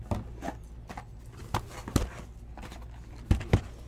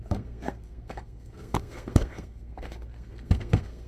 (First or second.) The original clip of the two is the first